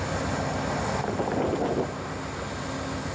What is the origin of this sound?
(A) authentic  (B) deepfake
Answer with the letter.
A